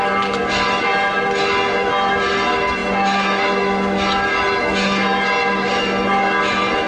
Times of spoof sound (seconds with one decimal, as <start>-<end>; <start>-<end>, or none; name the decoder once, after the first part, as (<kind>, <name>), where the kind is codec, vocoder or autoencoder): none